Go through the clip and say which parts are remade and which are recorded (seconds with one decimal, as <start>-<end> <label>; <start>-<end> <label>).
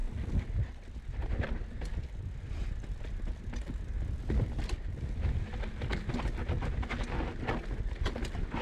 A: 0.0-8.6 recorded